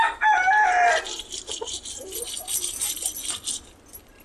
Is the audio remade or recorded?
recorded